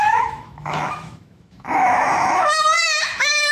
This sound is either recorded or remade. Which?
remade